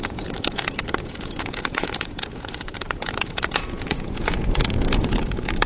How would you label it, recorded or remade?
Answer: remade